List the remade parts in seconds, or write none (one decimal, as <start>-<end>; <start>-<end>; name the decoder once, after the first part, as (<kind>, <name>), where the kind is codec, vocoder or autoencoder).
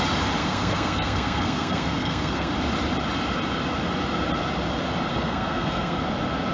0.4-2.5 (codec, SNAC); 5.1-6.0